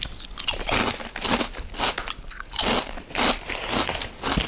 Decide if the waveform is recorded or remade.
recorded